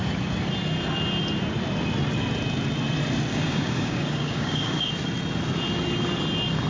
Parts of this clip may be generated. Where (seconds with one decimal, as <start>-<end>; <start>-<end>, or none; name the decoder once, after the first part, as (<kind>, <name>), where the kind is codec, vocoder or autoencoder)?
3.3-4.9 (codec, DAC)

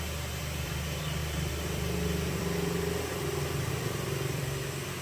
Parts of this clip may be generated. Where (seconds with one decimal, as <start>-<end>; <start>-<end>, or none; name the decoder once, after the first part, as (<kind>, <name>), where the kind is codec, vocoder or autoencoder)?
0.0-5.0 (vocoder, BigVGAN v2)

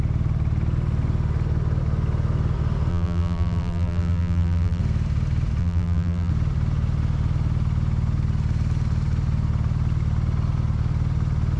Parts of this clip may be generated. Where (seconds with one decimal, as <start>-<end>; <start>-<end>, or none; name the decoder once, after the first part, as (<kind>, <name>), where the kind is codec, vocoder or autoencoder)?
2.9-4.8 (vocoder, BigVGAN v2); 5.6-6.3

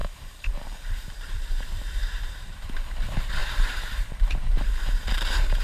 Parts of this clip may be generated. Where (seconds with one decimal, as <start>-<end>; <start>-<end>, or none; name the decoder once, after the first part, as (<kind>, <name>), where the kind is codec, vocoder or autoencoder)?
0.0-5.6 (vocoder, BigVGAN v2)